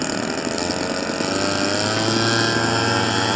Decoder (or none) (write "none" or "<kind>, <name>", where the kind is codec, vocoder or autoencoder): none